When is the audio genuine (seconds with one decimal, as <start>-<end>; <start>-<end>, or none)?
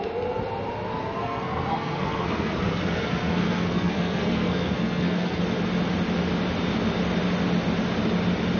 0.0-1.2; 5.4-8.6